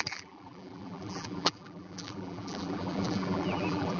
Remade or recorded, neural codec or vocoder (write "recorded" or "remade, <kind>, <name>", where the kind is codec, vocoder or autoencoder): remade, vocoder, BigVGAN v2